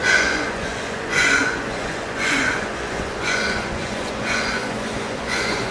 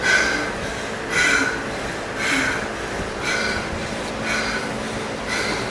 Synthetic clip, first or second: first